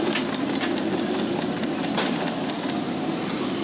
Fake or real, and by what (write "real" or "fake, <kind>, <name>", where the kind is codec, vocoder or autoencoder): real